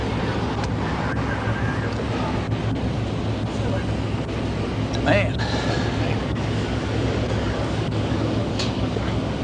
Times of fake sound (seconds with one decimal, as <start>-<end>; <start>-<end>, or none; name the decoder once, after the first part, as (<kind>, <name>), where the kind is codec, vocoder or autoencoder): 6.2-9.4 (codec, DAC)